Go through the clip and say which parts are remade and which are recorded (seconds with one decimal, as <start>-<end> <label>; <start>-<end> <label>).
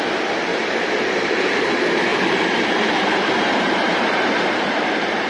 0.0-0.5 recorded; 0.5-1.4 remade; 1.4-2.1 recorded; 2.1-5.3 remade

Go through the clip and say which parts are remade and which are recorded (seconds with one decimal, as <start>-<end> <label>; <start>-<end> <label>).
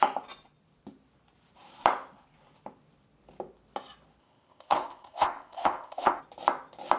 0.0-4.2 recorded; 4.2-6.2 remade; 6.2-7.0 recorded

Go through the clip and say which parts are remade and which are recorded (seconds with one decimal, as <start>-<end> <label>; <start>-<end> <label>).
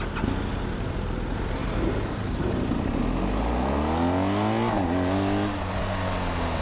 0.0-1.6 recorded; 1.6-3.0 remade; 3.0-6.6 recorded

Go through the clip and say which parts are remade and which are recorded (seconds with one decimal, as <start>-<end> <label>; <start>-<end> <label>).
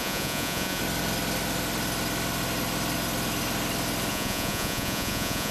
0.0-0.8 remade; 0.8-4.1 recorded; 4.1-5.5 remade